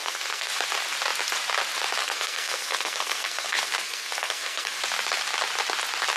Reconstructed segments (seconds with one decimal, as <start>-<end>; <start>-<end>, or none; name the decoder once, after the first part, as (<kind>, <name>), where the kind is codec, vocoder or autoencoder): 0.0-0.5 (codec, SNAC); 2.0-4.8